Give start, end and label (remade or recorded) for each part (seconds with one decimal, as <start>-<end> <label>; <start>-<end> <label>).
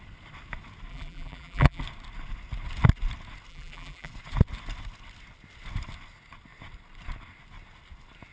0.0-0.9 recorded; 0.9-1.8 remade; 1.8-3.5 recorded; 3.5-4.1 remade; 4.1-8.3 recorded